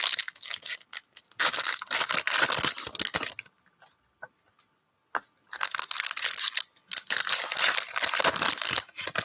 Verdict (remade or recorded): recorded